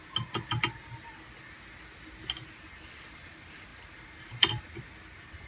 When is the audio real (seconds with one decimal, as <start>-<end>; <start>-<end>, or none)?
0.0-5.5